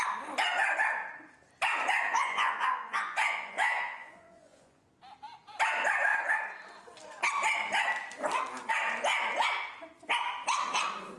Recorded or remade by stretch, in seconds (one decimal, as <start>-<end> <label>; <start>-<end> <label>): 0.0-2.1 recorded; 2.1-4.9 remade; 4.9-11.2 recorded